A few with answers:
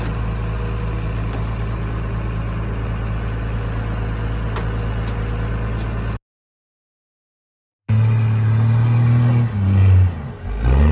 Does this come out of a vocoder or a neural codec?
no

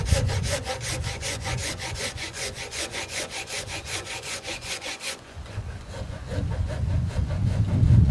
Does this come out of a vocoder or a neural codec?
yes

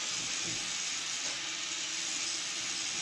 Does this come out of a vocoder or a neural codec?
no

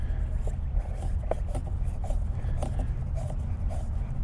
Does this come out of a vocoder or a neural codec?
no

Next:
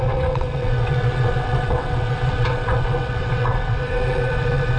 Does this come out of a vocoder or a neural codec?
yes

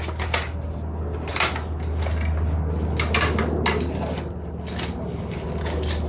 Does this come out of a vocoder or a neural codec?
no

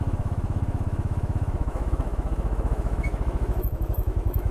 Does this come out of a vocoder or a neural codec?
yes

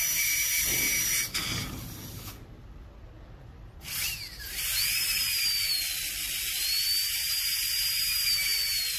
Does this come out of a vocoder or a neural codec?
no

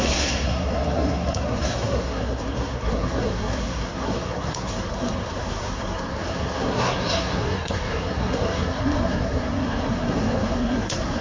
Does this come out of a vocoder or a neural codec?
yes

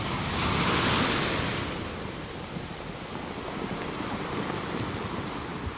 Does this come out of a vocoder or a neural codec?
no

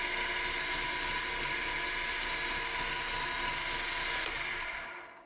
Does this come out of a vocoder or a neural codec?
no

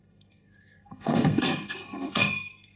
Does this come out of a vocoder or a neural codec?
yes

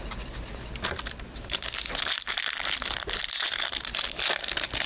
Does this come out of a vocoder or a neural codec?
no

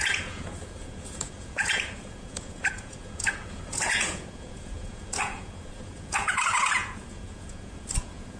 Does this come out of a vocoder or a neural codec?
yes